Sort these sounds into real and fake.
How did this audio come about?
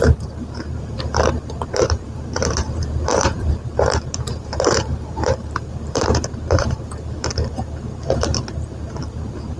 fake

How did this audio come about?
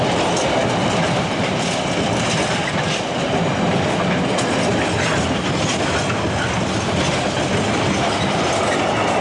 real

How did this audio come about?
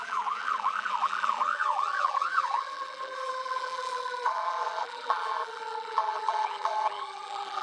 fake